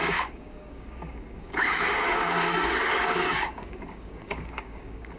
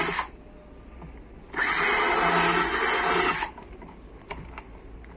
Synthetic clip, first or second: first